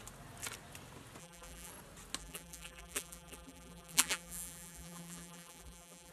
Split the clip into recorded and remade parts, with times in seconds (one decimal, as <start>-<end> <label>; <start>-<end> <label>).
0.0-1.2 recorded; 1.2-1.7 remade; 1.7-2.2 recorded; 2.2-6.1 remade